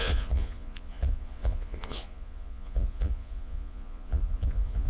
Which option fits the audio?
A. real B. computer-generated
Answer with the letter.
B